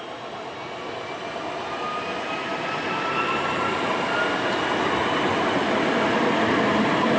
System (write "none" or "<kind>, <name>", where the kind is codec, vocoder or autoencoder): none